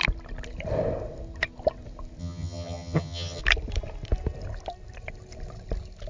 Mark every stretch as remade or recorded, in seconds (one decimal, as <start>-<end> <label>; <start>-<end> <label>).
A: 0.0-2.2 recorded; 2.2-3.4 remade; 3.4-6.1 recorded

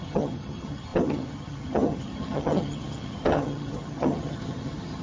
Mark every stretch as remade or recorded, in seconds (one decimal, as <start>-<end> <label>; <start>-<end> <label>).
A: 0.0-5.0 remade

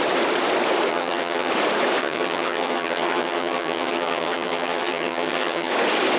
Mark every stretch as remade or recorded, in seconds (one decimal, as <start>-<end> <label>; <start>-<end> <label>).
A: 0.0-0.9 recorded; 0.9-1.5 remade; 1.5-2.0 recorded; 2.0-5.7 remade; 5.7-6.2 recorded

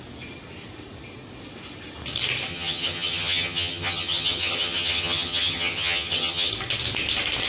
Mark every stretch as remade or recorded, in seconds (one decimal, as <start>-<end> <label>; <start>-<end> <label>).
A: 0.0-2.5 recorded; 2.5-6.5 remade; 6.5-7.5 recorded

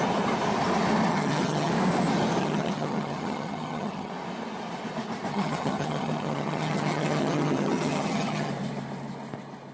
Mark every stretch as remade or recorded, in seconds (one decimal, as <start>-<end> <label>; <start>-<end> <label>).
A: 0.0-1.1 recorded; 1.1-1.7 remade; 1.7-2.4 recorded; 2.4-4.1 remade; 4.1-5.3 recorded; 5.3-8.5 remade; 8.5-9.7 recorded

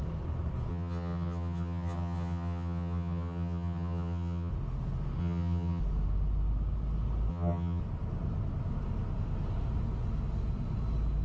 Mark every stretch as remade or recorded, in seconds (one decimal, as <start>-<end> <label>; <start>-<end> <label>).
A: 0.0-0.7 recorded; 0.7-4.5 remade; 4.5-5.2 recorded; 5.2-5.8 remade; 5.8-7.3 recorded; 7.3-7.8 remade; 7.8-11.2 recorded

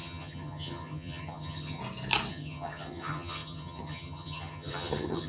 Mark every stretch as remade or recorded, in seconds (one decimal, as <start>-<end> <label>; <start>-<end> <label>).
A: 0.0-1.8 remade; 1.8-2.3 recorded; 2.3-5.3 remade

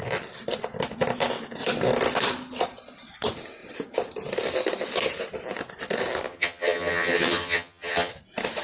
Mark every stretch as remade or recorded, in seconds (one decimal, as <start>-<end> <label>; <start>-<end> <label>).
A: 0.0-6.3 recorded; 6.3-8.1 remade; 8.1-8.6 recorded